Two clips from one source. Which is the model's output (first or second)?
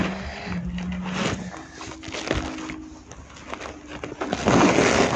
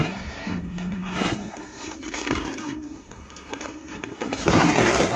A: second